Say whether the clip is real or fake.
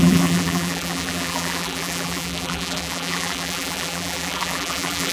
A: fake